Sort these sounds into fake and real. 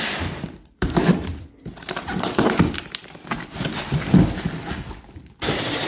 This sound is fake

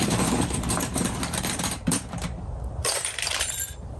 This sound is fake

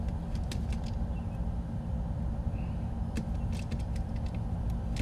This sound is real